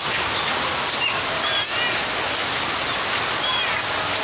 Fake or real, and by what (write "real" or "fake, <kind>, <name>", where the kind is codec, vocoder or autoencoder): real